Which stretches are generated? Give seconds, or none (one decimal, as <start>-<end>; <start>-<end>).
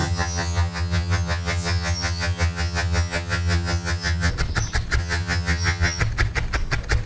0.0-4.3; 5.0-6.0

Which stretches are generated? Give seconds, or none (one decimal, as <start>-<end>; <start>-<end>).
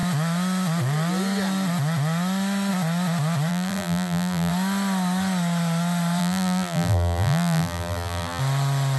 3.5-4.5; 6.2-8.4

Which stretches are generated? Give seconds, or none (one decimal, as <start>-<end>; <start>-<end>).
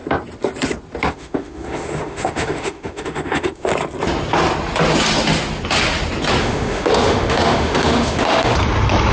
1.1-3.7; 6.4-8.5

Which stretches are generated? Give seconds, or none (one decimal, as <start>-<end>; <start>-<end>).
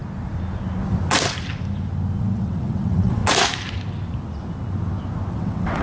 2.2-3.2; 5.3-5.8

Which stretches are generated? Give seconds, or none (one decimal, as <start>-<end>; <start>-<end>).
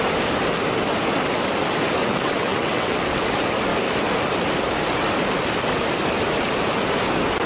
2.0-3.0